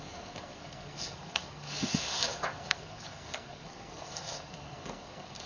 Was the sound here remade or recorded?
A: remade